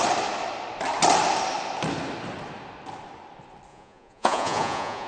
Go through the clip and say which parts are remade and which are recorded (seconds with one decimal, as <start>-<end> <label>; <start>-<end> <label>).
0.0-3.7 recorded; 3.7-5.1 remade